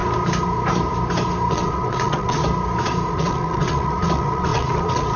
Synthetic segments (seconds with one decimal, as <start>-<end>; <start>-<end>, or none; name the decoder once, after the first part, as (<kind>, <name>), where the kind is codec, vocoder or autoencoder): 1.5-2.4 (vocoder, WaveNeXt); 3.1-5.2